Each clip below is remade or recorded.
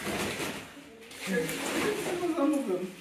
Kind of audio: recorded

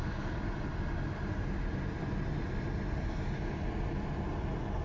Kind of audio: recorded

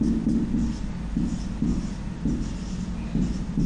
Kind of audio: recorded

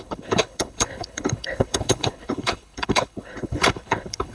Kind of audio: remade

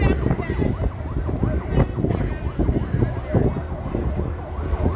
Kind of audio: recorded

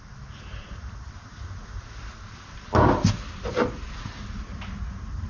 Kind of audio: recorded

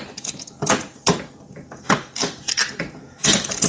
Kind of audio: recorded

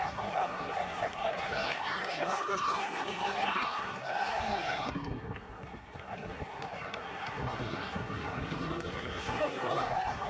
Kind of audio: remade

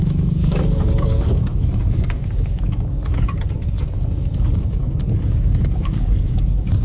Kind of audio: remade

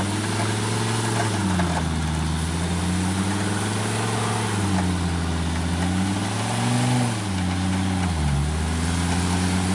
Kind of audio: recorded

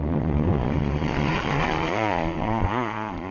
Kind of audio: remade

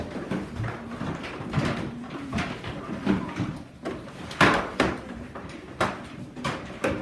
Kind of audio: remade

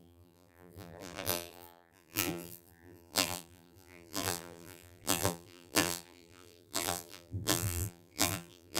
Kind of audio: remade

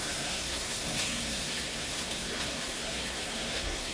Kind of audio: remade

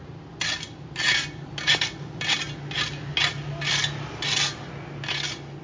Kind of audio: recorded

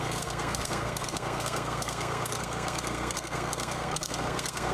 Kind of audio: remade